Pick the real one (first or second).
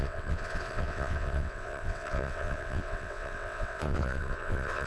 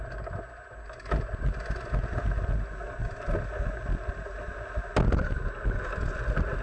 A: second